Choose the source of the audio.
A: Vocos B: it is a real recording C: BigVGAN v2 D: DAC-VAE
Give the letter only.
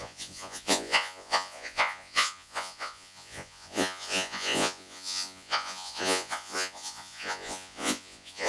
A